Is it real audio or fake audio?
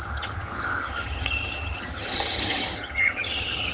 fake